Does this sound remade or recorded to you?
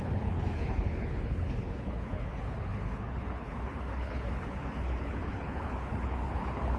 remade